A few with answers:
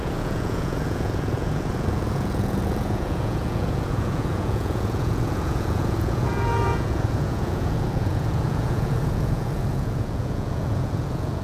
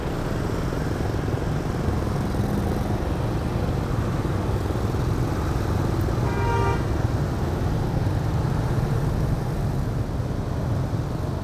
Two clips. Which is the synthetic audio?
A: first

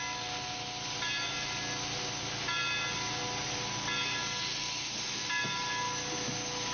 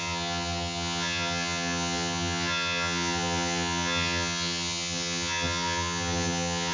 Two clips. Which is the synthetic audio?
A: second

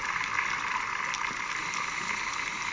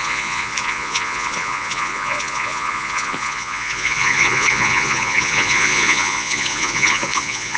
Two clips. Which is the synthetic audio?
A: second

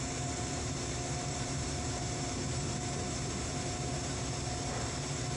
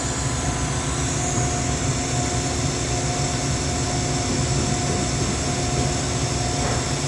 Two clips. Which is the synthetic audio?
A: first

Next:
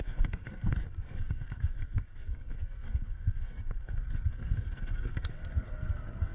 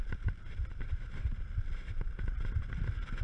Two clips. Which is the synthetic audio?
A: first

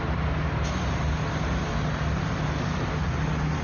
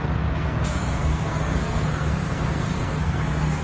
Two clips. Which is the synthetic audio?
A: second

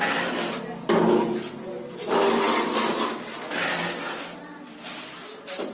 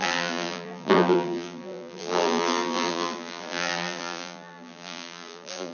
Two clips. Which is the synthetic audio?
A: second